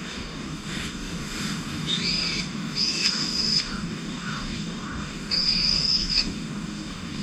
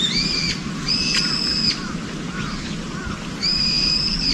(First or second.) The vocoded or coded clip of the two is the first